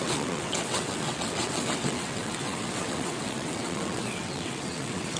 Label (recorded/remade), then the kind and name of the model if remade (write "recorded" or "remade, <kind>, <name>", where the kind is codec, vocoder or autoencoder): remade, vocoder, WaveNeXt